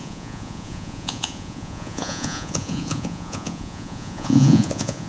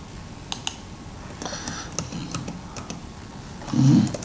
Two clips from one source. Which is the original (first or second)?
second